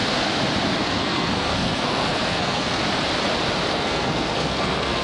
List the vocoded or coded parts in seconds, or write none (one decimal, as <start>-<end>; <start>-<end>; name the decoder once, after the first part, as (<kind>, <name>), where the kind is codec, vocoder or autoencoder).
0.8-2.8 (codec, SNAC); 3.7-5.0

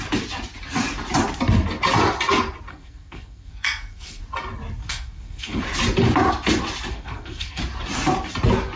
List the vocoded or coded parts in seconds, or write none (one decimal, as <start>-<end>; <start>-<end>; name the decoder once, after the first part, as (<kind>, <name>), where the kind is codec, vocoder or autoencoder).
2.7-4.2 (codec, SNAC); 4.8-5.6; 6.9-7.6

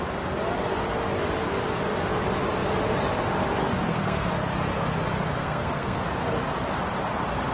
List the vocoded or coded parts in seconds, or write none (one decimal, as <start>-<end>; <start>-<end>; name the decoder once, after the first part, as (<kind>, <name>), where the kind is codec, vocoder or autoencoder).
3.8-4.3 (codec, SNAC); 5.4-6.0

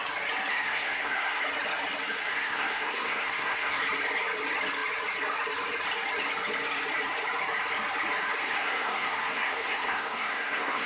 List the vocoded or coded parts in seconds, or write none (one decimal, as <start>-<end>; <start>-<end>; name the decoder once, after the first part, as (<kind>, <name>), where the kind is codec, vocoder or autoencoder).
0.5-1.4 (codec, SNAC); 2.2-3.8; 8.4-10.9

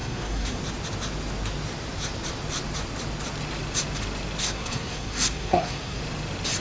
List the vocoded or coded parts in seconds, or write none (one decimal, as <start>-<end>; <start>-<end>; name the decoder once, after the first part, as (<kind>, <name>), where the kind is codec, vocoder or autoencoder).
0.0-0.6 (codec, SNAC); 4.4-6.0

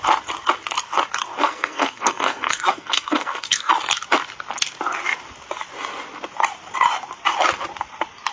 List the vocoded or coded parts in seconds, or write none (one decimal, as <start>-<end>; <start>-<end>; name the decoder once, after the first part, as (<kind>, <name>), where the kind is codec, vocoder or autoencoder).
1.4-3.7 (codec, SNAC)